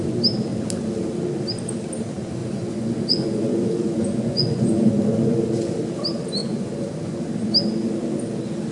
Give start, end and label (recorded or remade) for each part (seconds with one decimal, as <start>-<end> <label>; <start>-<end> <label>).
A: 0.0-2.4 recorded; 2.4-4.9 remade; 4.9-6.4 recorded; 6.4-7.2 remade; 7.2-8.7 recorded